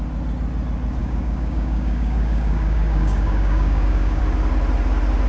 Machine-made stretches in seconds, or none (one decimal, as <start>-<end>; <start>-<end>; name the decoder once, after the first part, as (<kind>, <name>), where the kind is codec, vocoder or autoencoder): 1.0-4.2 (codec, DAC)